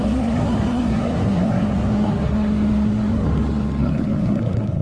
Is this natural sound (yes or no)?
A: no